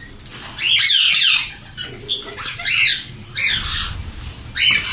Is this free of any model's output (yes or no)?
yes